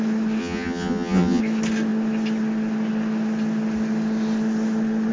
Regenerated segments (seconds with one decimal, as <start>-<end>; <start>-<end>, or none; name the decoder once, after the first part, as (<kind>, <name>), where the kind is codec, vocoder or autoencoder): 0.4-1.4 (vocoder, HiFi-GAN)